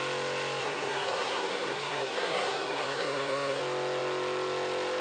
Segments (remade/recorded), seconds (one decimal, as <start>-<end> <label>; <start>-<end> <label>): 0.0-0.6 recorded; 0.6-3.6 remade; 3.6-5.0 recorded